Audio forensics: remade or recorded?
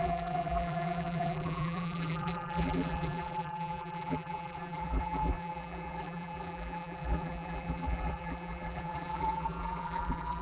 remade